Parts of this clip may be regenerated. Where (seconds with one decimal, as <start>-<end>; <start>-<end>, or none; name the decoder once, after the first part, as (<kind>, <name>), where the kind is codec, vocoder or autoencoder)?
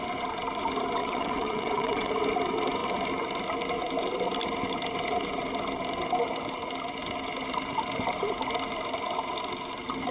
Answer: 1.0-2.1 (vocoder, WaveNeXt)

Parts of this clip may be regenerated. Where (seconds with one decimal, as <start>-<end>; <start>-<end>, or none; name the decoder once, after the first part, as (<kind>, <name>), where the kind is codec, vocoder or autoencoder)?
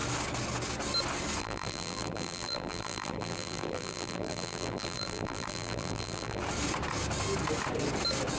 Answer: 1.4-6.4 (vocoder, BigVGAN v2)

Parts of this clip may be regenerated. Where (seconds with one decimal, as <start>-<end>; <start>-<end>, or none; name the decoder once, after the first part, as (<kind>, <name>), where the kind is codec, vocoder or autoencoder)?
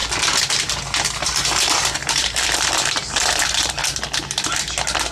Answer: 2.0-3.8 (vocoder, BigVGAN v2)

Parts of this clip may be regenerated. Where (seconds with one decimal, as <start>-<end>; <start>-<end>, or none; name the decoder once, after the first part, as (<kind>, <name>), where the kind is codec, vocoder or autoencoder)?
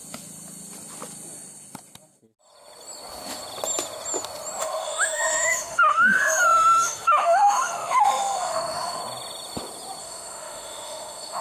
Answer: 4.6-9.0 (autoencoder, DAC-VAE); 10.0-11.4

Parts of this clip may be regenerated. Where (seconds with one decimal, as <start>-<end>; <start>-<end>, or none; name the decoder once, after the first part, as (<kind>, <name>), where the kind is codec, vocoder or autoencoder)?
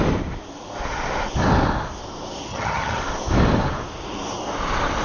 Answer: 2.5-3.0 (vocoder, HiFi-GAN)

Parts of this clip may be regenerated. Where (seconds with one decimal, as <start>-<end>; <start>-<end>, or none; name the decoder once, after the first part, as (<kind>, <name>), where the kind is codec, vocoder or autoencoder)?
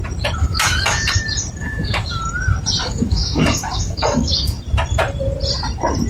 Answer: 0.4-1.2 (codec, DAC); 1.6-2.2; 2.8-4.6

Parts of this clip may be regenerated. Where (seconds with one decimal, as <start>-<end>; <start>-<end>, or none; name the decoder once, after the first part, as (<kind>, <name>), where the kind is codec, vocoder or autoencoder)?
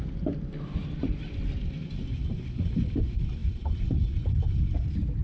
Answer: none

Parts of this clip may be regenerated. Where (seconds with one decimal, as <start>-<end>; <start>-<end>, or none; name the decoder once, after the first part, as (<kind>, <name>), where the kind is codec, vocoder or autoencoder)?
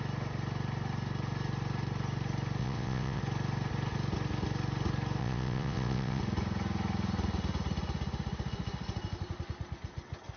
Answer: 2.6-3.2 (vocoder, WaveNeXt); 5.2-6.2